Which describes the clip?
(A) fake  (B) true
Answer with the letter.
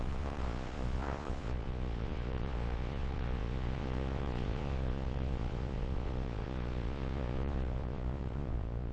A